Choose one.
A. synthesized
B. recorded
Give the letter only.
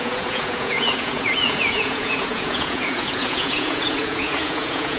A